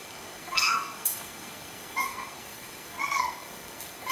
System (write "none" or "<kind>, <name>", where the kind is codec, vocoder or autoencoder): codec, SNAC